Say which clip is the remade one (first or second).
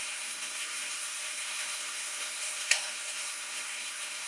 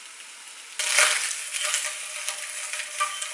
first